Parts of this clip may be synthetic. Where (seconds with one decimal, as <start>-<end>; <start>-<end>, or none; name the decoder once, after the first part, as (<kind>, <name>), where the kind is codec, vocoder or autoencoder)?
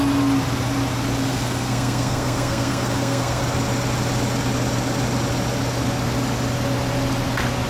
1.3-3.4 (codec, SNAC)